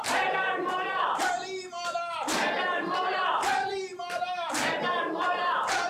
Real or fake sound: fake